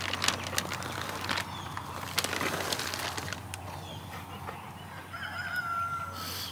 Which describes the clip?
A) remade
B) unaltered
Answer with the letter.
B